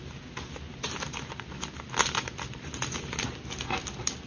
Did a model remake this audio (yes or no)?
no